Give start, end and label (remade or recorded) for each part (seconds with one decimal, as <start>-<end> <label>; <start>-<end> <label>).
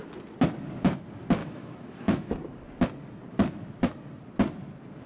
0.0-1.4 recorded; 1.4-2.3 remade; 2.3-5.1 recorded